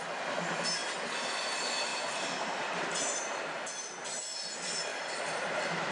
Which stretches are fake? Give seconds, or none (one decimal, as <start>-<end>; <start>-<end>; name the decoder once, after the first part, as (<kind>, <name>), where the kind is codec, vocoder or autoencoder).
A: 1.9-3.7 (vocoder, BigVGAN v2); 4.9-5.9